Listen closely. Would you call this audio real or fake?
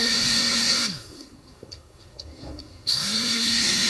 fake